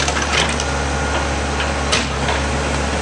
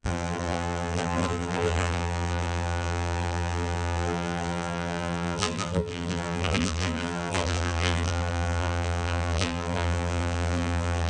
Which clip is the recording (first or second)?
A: first